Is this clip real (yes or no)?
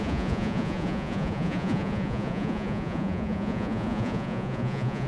no